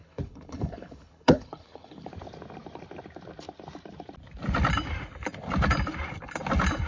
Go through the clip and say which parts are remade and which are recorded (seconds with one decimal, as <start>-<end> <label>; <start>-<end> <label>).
0.0-2.1 remade; 2.1-6.9 recorded